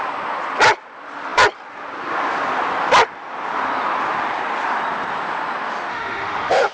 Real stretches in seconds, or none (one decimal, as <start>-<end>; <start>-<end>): 0.0-5.9